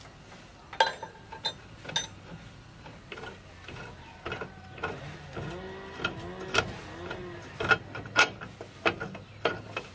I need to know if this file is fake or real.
real